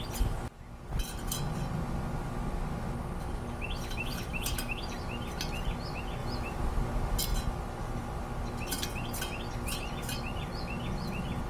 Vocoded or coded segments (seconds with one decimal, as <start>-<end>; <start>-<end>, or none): 4.3-5.0; 6.2-7.2